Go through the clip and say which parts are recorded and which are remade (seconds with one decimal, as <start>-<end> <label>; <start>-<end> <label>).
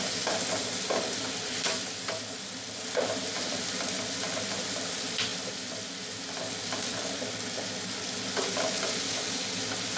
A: 0.0-10.0 recorded